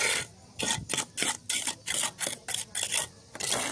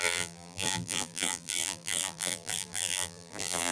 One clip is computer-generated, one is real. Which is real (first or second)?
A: first